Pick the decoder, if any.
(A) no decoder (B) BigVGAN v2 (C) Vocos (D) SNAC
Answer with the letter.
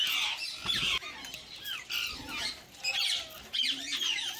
A